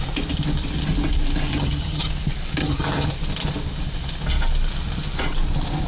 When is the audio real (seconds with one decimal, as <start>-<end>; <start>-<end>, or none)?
0.0-1.5; 2.1-2.6; 3.1-5.9